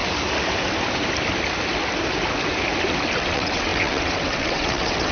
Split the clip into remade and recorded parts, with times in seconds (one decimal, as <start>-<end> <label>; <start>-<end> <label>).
0.0-3.1 recorded; 3.1-5.1 remade

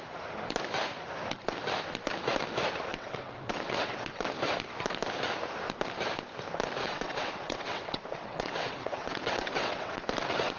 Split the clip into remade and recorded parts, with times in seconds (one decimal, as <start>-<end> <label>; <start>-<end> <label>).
0.0-2.9 recorded; 2.9-4.3 remade; 4.3-6.8 recorded; 6.8-10.1 remade; 10.1-10.6 recorded

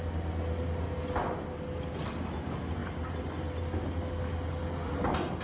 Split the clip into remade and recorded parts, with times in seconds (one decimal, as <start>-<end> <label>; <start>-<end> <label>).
0.0-5.4 recorded

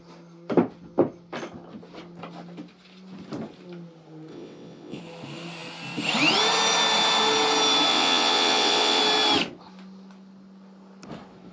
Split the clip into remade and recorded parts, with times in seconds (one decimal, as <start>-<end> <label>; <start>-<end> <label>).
0.0-4.3 recorded; 4.3-5.0 remade; 5.0-7.9 recorded; 7.9-9.0 remade; 9.0-11.5 recorded

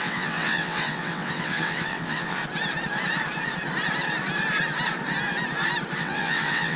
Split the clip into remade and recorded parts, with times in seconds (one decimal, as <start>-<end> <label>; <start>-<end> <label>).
0.0-2.4 remade; 2.4-6.0 recorded; 6.0-6.8 remade

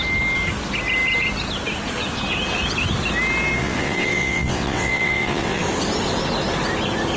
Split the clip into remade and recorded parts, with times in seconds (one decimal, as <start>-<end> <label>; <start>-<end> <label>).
0.0-3.6 recorded; 3.6-5.6 remade; 5.6-7.2 recorded

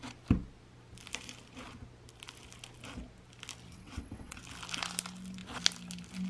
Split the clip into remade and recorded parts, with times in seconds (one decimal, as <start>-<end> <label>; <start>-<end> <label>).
0.0-3.7 recorded; 3.7-4.4 remade; 4.4-6.3 recorded